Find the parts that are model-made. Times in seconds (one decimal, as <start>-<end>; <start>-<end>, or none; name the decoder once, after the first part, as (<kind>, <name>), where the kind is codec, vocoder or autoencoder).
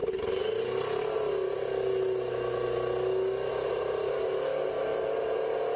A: none